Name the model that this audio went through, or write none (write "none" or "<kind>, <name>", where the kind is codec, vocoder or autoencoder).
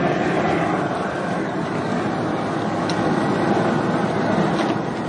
none